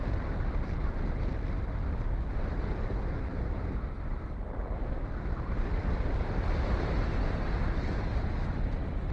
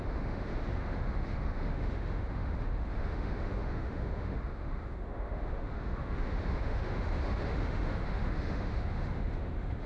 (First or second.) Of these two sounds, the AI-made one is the second